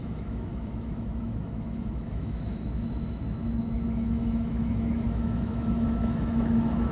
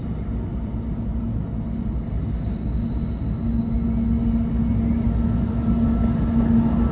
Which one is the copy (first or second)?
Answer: first